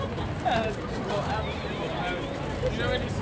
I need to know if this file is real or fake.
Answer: real